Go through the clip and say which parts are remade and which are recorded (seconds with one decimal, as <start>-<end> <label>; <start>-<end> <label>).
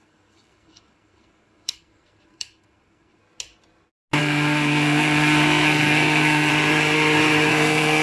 0.0-3.2 remade; 3.2-4.2 recorded; 4.2-6.5 remade; 6.5-7.5 recorded; 7.5-8.0 remade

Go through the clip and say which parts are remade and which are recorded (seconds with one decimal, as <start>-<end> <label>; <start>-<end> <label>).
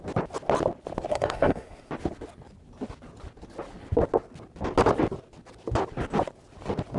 0.0-1.1 recorded; 1.1-1.9 remade; 1.9-7.0 recorded